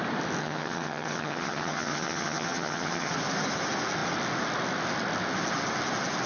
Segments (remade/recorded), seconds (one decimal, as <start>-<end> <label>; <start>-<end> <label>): 0.0-0.4 recorded; 0.4-3.1 remade; 3.1-6.3 recorded